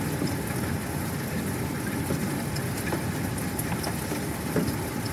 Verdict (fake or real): real